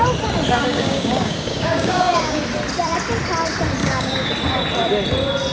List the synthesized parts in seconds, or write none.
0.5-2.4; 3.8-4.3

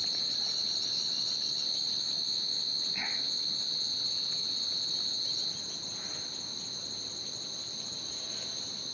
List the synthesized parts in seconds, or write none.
none

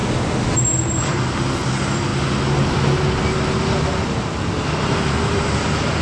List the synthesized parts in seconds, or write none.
none

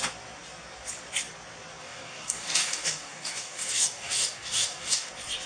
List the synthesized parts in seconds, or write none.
1.8-5.1